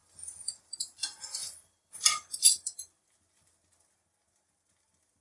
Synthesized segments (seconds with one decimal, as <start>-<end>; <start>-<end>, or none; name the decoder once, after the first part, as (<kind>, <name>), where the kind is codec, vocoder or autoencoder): none